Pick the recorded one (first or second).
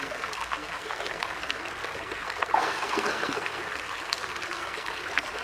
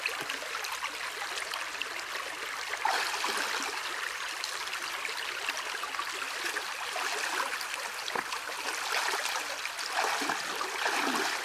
second